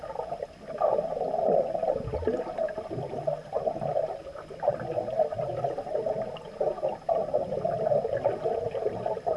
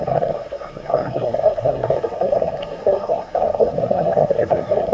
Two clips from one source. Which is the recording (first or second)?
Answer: first